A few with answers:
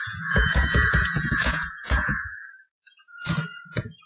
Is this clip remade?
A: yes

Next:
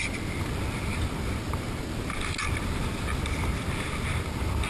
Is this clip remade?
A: no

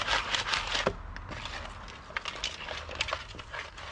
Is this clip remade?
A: no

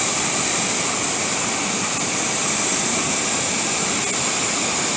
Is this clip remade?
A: no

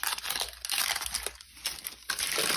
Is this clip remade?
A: no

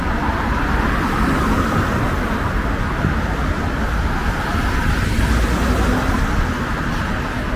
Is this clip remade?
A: no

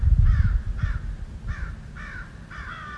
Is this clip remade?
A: no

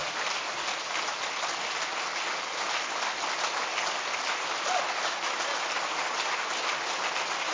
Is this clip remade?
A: no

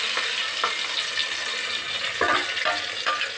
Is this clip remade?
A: no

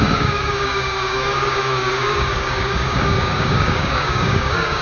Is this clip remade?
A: yes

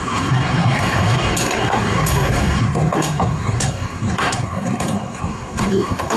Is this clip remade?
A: yes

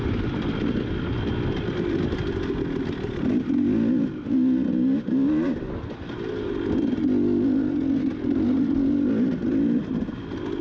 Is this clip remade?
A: no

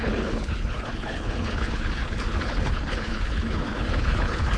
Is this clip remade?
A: yes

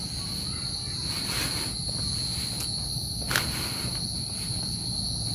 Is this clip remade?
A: no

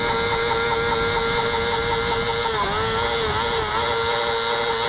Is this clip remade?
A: no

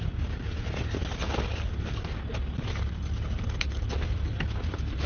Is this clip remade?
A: no